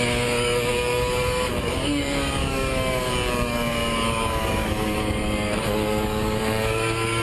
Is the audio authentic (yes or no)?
no